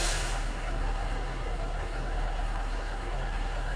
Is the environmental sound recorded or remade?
remade